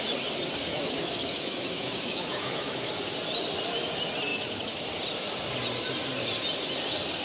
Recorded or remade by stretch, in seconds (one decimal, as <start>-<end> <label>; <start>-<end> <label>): 0.0-0.7 recorded; 0.7-2.9 remade; 2.9-4.3 recorded; 4.3-4.8 remade; 4.8-7.2 recorded